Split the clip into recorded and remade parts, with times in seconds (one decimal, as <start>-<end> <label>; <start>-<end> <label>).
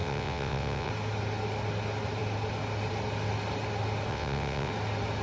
0.0-0.9 remade; 0.9-4.1 recorded; 4.1-4.7 remade; 4.7-5.2 recorded